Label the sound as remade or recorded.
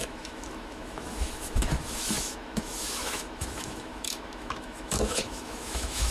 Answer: remade